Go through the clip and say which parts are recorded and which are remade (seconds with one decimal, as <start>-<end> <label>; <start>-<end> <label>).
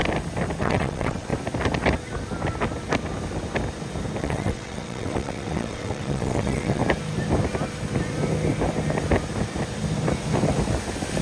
0.0-0.6 recorded; 0.6-1.3 remade; 1.3-4.2 recorded; 4.2-6.8 remade; 6.8-11.2 recorded